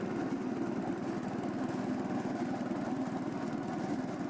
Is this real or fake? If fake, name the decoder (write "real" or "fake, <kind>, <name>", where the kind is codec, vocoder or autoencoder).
real